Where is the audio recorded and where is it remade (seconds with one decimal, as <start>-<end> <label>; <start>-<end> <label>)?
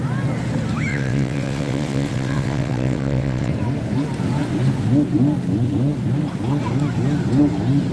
0.0-0.9 recorded; 0.9-3.5 remade; 3.5-7.9 recorded